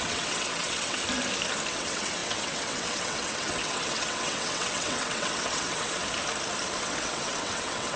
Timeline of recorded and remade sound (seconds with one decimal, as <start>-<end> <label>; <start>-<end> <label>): 0.0-1.0 remade; 1.0-1.7 recorded; 1.7-6.0 remade; 6.0-6.8 recorded; 6.8-8.0 remade